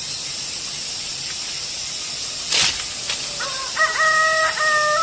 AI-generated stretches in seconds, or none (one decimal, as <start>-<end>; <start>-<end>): none